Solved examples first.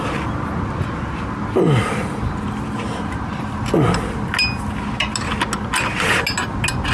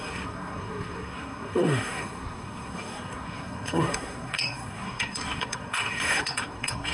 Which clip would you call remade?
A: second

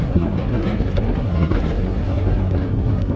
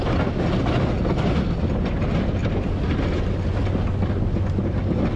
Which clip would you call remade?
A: first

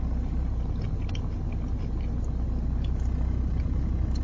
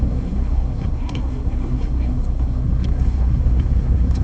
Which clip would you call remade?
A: second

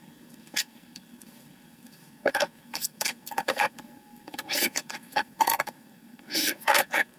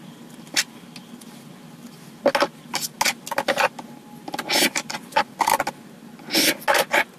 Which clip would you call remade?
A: first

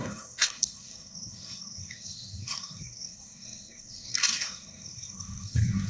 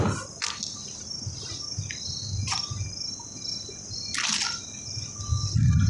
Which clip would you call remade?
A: first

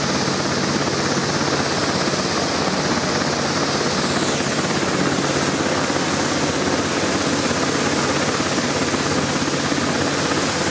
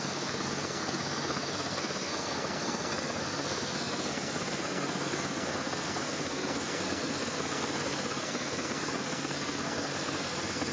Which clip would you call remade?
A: second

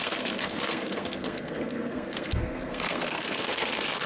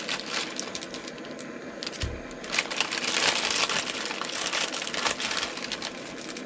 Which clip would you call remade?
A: first